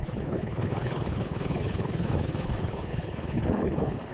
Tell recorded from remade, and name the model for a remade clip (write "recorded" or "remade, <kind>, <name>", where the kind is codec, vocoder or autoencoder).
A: remade, codec, HILCodec